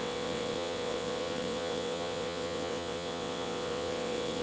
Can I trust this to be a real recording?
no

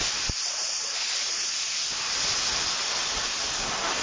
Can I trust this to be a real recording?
yes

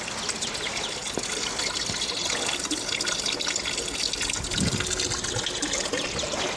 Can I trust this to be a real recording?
yes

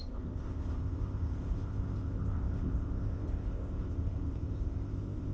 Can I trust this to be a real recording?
no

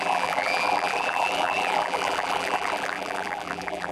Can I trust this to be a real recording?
no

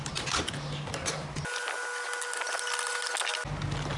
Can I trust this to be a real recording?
yes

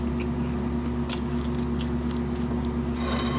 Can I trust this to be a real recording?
yes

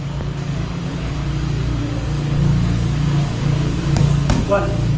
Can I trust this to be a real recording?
no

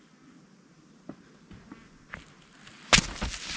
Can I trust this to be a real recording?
yes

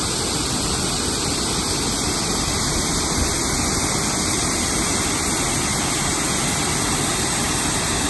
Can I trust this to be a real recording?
yes